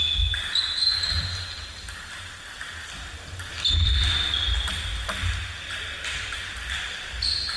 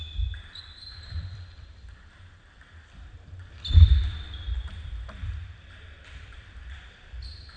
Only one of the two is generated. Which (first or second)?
second